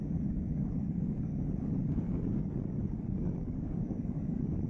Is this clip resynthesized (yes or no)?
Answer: yes